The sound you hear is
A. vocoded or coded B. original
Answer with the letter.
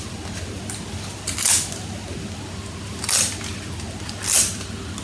B